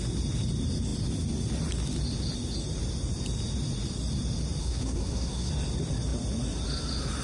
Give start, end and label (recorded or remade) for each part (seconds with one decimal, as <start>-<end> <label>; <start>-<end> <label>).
0.0-4.6 recorded; 4.6-5.5 remade; 5.5-7.2 recorded